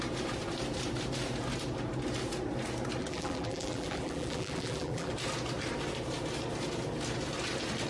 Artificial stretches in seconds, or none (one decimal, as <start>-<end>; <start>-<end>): 3.0-5.1